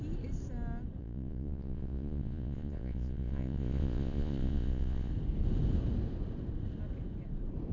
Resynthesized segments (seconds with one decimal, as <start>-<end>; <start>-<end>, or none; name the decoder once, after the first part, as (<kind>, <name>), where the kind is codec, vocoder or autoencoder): 1.0-5.1 (vocoder, Vocos)